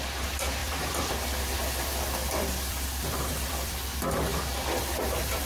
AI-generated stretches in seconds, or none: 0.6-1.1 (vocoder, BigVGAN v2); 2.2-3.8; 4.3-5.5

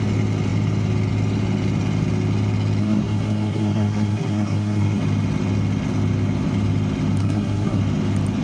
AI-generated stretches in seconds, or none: 2.8-5.0 (codec, SNAC); 7.2-7.8

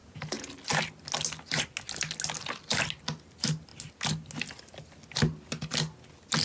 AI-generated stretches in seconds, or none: 0.0-0.5 (vocoder, Vocos)